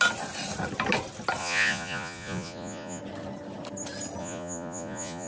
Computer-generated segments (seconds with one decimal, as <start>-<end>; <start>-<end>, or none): 1.4-3.0; 4.2-5.3